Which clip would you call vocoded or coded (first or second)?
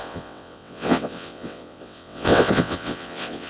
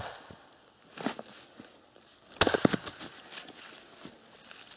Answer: first